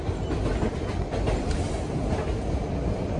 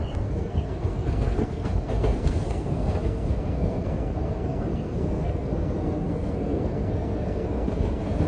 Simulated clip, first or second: second